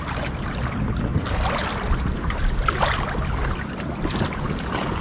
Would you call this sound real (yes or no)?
yes